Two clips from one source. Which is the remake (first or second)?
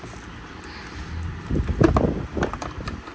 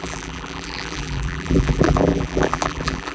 second